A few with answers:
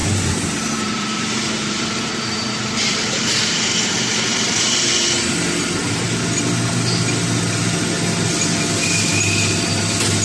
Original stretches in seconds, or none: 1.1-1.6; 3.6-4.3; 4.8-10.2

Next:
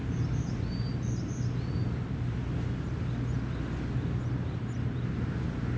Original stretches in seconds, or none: 0.0-5.8

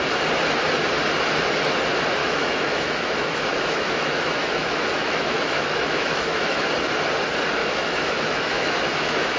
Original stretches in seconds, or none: 0.0-2.2; 6.7-7.6